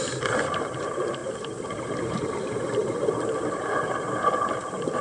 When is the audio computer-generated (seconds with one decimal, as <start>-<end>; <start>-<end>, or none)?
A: none